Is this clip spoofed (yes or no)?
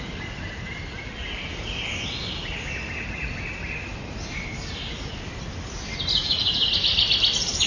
no